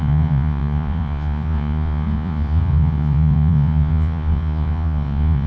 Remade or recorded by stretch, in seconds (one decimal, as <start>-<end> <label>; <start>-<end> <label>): 0.0-5.5 remade